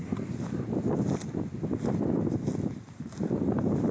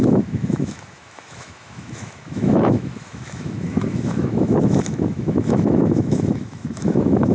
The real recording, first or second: first